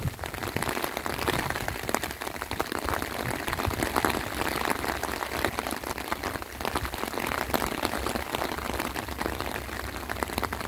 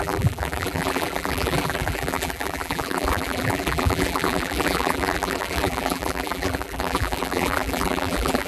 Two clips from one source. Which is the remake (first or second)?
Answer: second